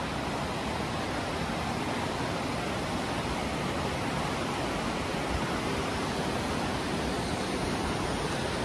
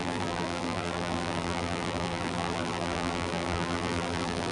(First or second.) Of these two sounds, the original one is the first